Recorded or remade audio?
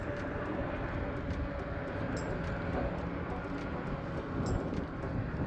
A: recorded